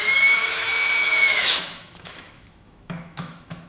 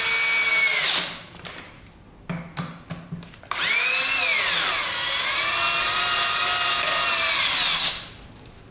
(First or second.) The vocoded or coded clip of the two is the first